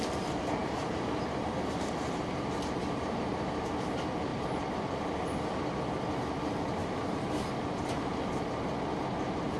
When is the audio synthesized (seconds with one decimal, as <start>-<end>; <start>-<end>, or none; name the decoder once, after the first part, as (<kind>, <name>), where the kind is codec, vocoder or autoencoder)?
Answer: 0.6-3.7 (vocoder, BigVGAN v2); 4.3-4.8; 6.8-7.4